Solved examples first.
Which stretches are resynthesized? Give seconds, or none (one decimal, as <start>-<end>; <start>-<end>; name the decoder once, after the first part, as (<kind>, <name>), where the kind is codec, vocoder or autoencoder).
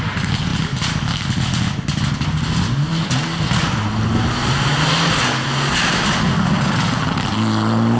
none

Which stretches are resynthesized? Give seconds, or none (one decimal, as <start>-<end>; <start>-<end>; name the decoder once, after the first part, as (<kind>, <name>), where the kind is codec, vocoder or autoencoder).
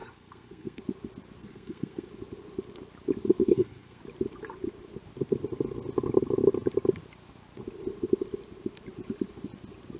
0.0-0.8 (codec, SNAC); 1.4-2.1; 3.4-4.0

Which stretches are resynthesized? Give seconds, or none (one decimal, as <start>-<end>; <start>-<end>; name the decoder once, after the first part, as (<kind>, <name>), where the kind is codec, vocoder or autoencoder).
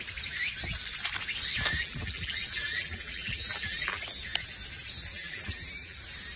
1.8-4.0 (vocoder, BigVGAN v2); 5.1-6.0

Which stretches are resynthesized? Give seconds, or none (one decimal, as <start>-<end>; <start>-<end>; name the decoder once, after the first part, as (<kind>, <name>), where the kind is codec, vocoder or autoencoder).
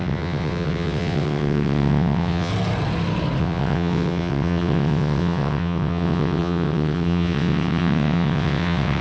0.0-2.5 (vocoder, WaveNeXt); 3.4-9.0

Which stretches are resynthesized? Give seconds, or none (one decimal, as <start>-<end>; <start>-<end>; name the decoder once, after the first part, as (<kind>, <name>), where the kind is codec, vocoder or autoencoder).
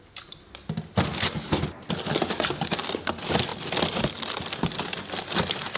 none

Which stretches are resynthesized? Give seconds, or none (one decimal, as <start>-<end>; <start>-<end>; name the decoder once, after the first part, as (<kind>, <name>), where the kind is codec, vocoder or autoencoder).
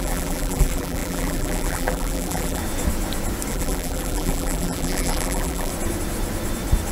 0.0-2.6 (vocoder, BigVGAN v2); 3.5-5.7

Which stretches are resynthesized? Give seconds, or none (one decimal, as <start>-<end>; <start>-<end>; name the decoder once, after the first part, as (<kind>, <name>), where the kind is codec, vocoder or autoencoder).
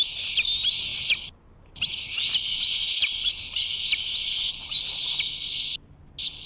none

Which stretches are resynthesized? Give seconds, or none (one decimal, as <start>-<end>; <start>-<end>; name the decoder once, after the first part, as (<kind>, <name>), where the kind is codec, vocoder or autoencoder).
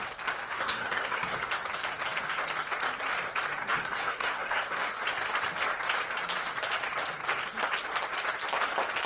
0.4-1.5 (codec, SNAC); 3.6-4.9